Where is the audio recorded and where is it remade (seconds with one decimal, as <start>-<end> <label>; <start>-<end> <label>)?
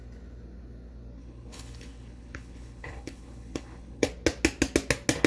0.0-1.2 recorded; 1.2-4.1 remade; 4.1-5.3 recorded